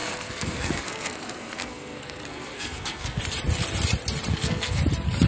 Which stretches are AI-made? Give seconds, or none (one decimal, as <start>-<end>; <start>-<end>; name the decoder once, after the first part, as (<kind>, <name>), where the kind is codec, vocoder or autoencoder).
0.0-3.2 (codec, SNAC); 4.3-4.8